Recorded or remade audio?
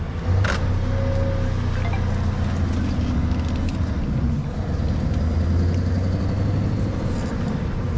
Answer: recorded